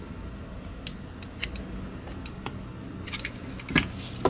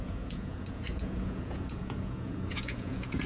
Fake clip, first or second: second